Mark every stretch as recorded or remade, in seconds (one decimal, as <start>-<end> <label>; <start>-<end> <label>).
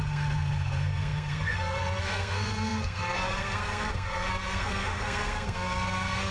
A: 0.0-6.3 remade